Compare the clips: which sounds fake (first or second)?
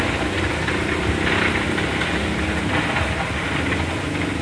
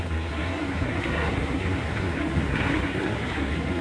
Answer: second